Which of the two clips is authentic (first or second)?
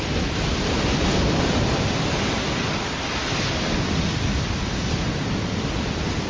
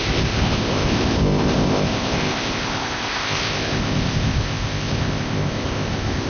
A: first